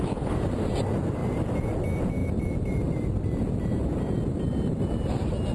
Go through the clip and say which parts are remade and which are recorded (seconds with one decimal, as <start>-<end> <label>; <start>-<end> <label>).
0.0-1.2 recorded; 1.2-1.8 remade; 1.8-2.2 recorded; 2.2-4.8 remade; 4.8-5.5 recorded